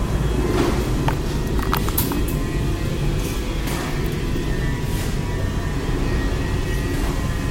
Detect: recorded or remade recorded